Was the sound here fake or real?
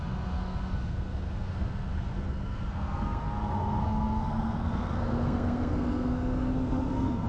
fake